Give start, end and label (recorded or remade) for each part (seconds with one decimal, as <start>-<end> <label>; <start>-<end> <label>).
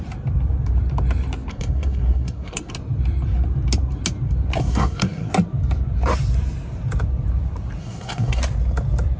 0.0-1.5 recorded; 1.5-2.7 remade; 2.7-4.6 recorded; 4.6-5.3 remade; 5.3-7.8 recorded; 7.8-8.4 remade; 8.4-9.2 recorded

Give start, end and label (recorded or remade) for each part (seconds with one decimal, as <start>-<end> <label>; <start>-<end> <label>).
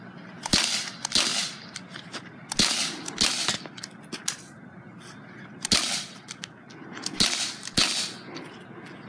0.0-9.1 recorded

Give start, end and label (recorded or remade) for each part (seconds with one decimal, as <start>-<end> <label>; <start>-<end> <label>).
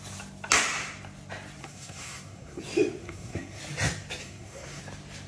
0.0-1.6 recorded; 1.6-2.6 remade; 2.6-3.0 recorded; 3.0-3.6 remade; 3.6-4.2 recorded; 4.2-4.8 remade; 4.8-5.3 recorded